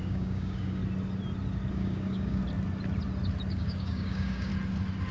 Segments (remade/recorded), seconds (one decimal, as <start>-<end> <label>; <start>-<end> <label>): 0.0-0.8 remade; 0.8-1.7 recorded; 1.7-2.4 remade; 2.4-3.5 recorded; 3.5-4.5 remade; 4.5-5.1 recorded